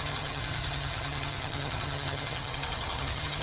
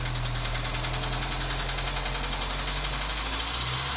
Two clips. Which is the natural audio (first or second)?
second